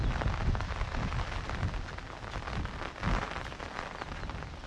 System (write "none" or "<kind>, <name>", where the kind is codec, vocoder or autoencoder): none